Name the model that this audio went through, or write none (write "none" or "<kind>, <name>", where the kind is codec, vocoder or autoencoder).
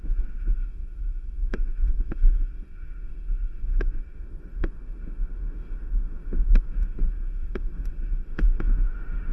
autoencoder, DAC-VAE